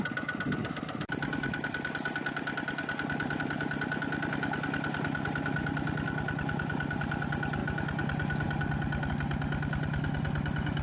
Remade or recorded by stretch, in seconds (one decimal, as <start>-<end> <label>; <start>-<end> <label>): 0.0-10.8 recorded

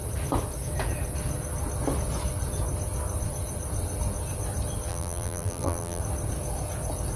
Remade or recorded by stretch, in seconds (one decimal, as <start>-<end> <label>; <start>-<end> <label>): 0.0-4.9 recorded; 4.9-6.0 remade; 6.0-7.2 recorded

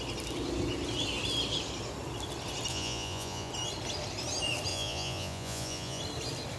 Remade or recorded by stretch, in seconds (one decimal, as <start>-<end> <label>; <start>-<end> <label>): 0.0-2.7 recorded; 2.7-3.5 remade; 3.5-4.7 recorded; 4.7-6.0 remade; 6.0-6.6 recorded

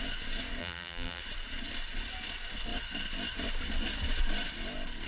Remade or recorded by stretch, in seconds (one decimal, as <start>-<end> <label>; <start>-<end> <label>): 0.0-0.6 recorded; 0.6-1.2 remade; 1.2-5.1 recorded

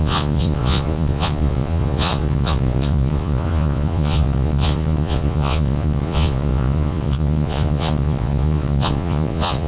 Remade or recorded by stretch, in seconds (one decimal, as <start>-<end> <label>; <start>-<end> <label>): 0.0-9.7 remade

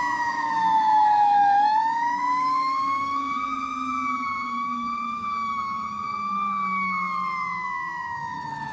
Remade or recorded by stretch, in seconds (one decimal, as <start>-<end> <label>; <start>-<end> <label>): 0.0-8.7 remade